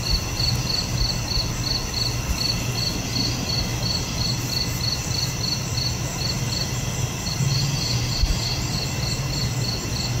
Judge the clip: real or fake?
real